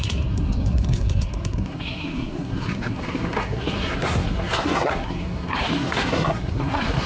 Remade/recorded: remade